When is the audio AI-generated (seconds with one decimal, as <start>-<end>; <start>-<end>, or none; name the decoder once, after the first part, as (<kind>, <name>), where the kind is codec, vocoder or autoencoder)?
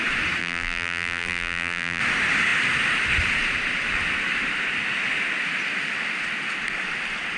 0.4-2.0 (vocoder, BigVGAN v2)